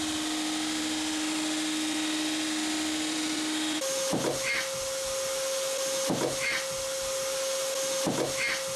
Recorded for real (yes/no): yes